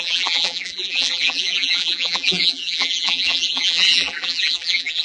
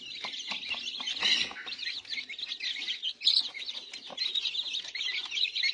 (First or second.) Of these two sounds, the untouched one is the second